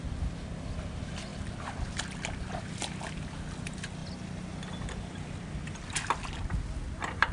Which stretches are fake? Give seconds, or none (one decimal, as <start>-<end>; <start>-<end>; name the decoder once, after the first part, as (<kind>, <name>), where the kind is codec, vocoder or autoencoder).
none